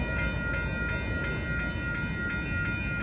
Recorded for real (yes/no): yes